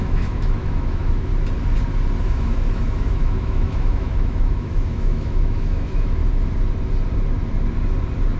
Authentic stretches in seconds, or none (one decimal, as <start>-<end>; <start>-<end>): 1.3-2.2; 6.2-8.4